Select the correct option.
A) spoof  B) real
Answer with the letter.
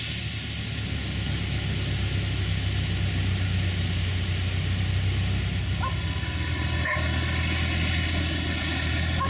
B